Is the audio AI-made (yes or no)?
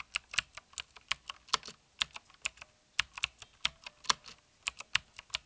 no